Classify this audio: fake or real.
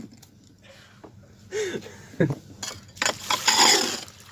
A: real